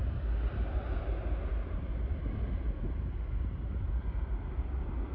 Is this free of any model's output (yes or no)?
yes